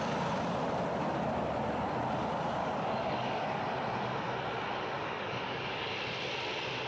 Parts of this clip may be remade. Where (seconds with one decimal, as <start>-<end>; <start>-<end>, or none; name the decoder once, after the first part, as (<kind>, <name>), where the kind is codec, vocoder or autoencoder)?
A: 2.6-3.6 (codec, DAC); 5.0-5.9